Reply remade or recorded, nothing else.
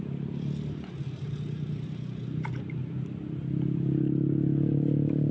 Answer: recorded